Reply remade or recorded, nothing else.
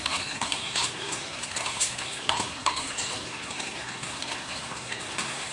remade